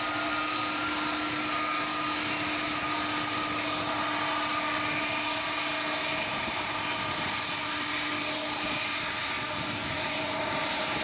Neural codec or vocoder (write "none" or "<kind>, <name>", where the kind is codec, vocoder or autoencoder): none